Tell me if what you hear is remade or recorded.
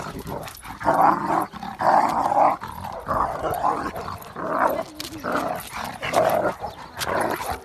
recorded